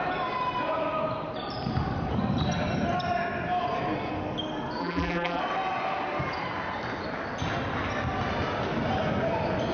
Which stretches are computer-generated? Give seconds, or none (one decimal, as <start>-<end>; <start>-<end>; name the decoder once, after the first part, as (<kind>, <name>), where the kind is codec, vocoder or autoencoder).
4.8-5.4 (vocoder, BigVGAN v2)